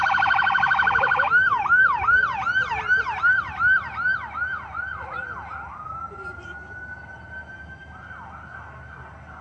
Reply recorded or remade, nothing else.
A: recorded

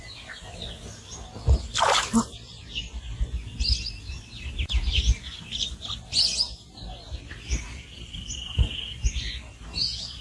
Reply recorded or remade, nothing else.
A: recorded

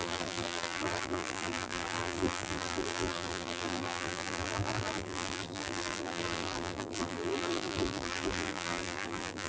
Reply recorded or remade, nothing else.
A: remade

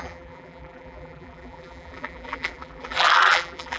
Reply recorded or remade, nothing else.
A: remade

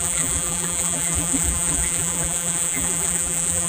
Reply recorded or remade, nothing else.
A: remade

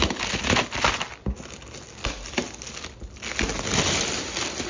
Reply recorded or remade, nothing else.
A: recorded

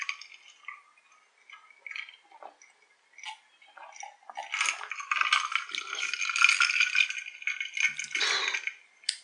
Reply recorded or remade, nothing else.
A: recorded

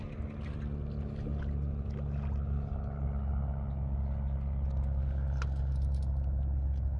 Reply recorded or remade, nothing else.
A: recorded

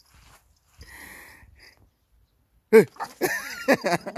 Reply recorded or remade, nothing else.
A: recorded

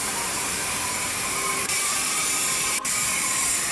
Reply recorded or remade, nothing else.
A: remade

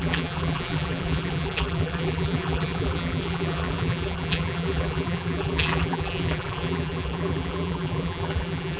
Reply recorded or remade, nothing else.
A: remade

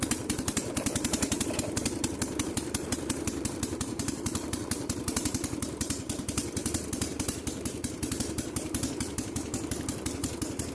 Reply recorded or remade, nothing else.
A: remade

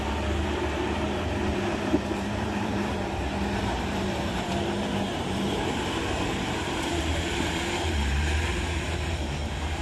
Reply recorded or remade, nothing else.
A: remade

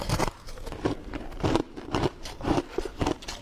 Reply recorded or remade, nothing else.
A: remade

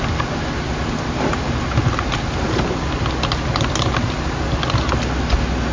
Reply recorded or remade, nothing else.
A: recorded